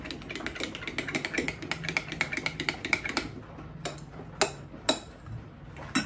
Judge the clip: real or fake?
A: real